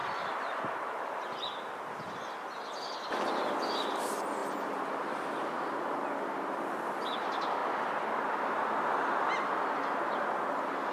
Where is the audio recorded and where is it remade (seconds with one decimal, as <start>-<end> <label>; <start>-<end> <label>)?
0.0-10.9 recorded